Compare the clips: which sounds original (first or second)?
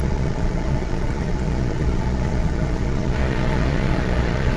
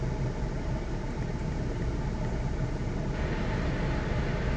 second